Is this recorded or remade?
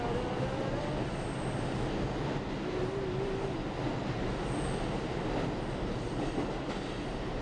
recorded